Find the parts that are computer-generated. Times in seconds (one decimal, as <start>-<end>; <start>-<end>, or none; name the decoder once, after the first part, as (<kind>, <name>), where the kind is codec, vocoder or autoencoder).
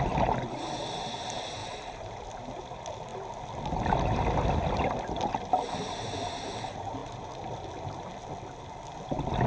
1.6-2.3 (vocoder, BigVGAN v2); 7.0-7.6